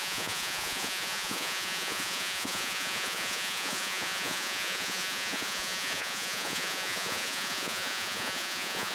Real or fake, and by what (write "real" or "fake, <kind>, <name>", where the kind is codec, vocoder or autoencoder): fake, vocoder, Vocos